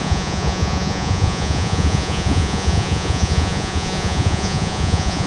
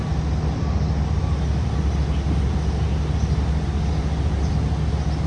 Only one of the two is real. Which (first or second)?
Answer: second